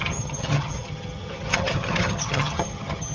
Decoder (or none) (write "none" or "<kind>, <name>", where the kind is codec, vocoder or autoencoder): vocoder, HiFi-GAN